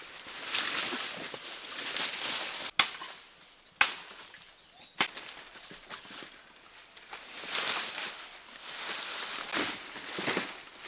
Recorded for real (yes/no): yes